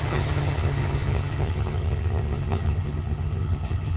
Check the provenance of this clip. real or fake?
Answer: fake